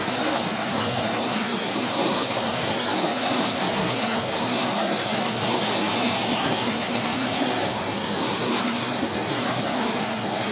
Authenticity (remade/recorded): remade